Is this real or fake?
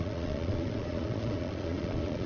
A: fake